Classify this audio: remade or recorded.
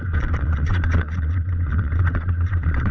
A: remade